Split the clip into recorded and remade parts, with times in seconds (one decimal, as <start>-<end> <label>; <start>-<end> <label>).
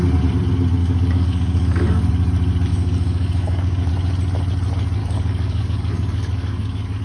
0.0-0.8 recorded; 0.8-2.1 remade; 2.1-2.7 recorded; 2.7-3.9 remade; 3.9-5.0 recorded; 5.0-7.0 remade